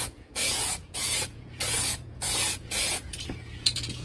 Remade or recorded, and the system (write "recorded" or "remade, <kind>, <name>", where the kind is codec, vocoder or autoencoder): remade, vocoder, Vocos